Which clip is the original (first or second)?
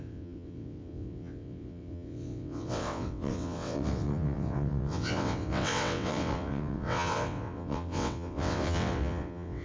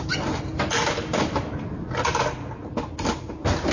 second